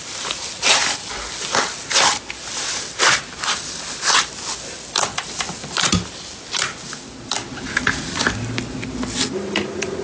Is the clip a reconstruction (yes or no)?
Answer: no